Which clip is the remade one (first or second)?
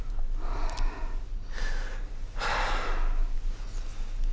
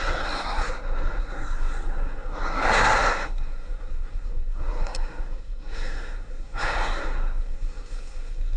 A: second